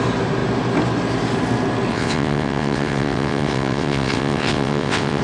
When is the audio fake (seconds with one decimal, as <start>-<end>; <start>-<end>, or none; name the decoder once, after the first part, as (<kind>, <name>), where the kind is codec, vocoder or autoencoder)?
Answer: 1.9-5.2 (vocoder, WaveNeXt)